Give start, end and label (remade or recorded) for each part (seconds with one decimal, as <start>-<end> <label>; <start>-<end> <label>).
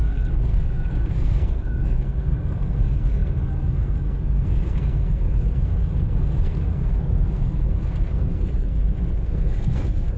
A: 0.0-10.2 remade